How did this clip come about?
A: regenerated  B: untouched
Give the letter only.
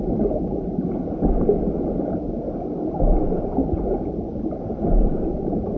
B